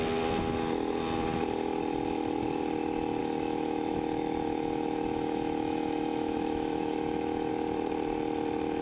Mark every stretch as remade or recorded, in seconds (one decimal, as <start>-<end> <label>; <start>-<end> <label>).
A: 0.0-3.2 recorded; 3.2-7.5 remade; 7.5-8.8 recorded